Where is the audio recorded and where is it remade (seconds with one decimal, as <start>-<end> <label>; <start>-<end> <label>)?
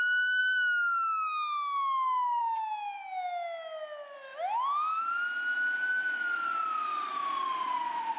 0.0-8.2 recorded